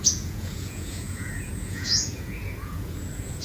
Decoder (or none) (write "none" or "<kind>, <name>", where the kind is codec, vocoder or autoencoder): vocoder, Vocos